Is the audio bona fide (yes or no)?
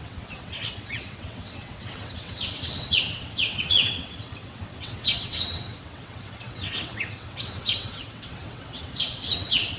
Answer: no